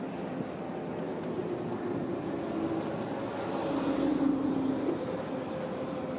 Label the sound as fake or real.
real